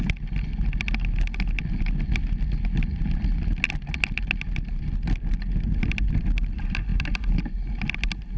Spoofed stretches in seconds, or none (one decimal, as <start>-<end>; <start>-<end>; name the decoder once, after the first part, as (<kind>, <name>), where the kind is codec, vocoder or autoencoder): none